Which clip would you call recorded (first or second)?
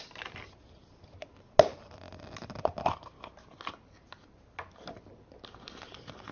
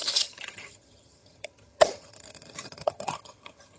first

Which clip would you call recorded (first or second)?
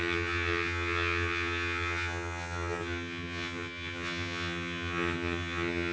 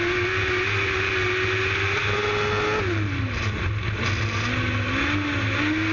second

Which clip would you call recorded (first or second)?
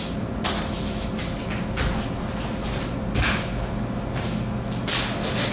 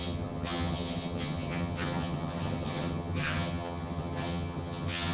first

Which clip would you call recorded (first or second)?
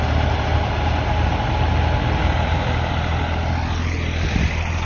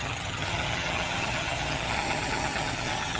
first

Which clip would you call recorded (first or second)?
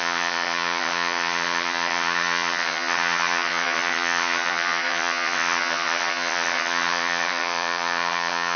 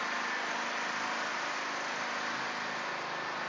second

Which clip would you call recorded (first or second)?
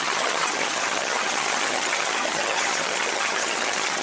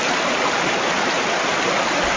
second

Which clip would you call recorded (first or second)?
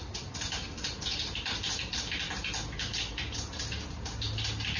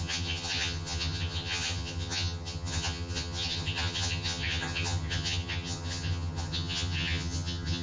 first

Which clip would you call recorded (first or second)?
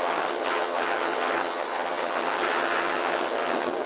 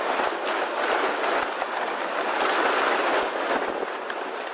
second